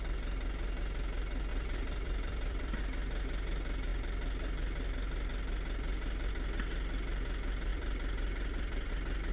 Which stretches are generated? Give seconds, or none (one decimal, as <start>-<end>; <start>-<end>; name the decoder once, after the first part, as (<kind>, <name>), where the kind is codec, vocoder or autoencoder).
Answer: 1.5-2.8 (vocoder, BigVGAN v2); 7.7-8.9